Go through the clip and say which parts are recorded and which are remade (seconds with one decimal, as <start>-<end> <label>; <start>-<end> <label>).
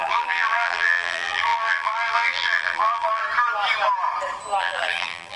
0.0-3.2 remade; 3.2-4.6 recorded; 4.6-5.4 remade